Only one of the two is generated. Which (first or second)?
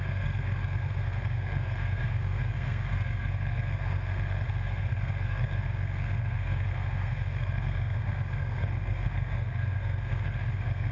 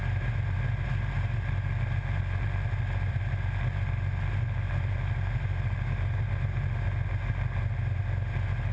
first